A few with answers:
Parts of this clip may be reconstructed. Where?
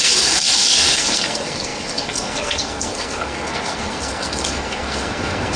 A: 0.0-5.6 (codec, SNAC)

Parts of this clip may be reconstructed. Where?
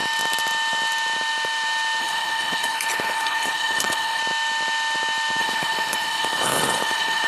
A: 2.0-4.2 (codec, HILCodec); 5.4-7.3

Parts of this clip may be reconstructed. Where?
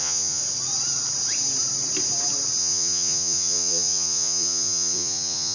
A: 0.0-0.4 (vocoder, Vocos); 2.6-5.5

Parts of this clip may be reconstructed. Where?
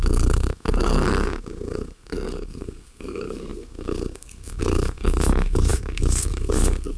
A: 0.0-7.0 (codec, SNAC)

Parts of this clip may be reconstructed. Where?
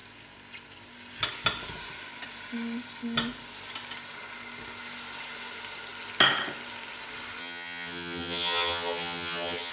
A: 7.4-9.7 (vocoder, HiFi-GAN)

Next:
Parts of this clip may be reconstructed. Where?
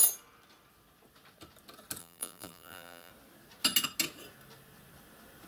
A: 2.0-3.1 (vocoder, BigVGAN v2)